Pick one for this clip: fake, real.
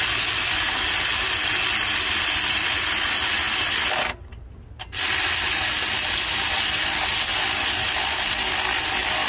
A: real